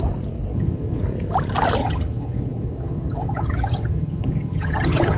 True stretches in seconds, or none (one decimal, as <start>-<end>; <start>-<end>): 0.0-0.5; 1.0-1.8